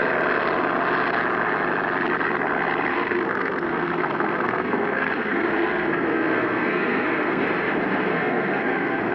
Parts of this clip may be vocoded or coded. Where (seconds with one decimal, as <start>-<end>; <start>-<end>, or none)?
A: 2.9-7.4; 8.1-9.1